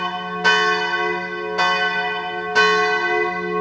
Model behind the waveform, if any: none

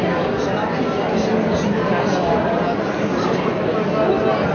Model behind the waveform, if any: none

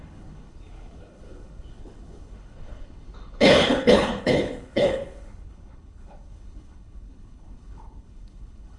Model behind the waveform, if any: codec, HILCodec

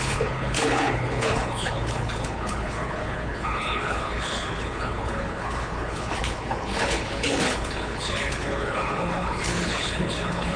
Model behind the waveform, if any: codec, HILCodec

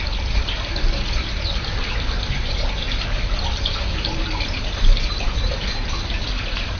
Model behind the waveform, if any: none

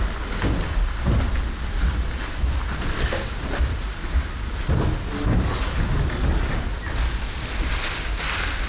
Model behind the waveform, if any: none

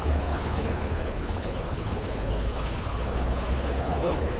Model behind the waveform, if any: codec, HILCodec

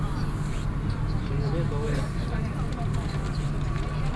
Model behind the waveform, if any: none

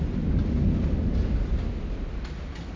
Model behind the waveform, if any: none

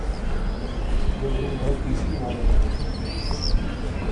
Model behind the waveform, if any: none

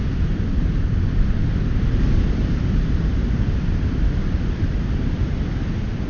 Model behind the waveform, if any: none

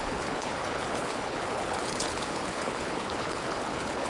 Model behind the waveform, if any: codec, HILCodec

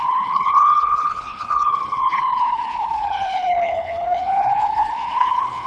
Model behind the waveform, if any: codec, HILCodec